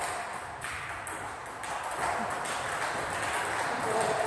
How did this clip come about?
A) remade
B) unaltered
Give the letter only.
B